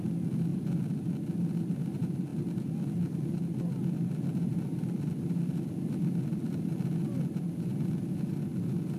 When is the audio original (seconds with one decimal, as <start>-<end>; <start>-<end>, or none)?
0.0-9.0